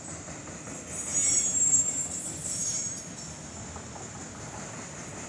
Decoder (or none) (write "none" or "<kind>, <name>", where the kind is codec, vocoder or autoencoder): none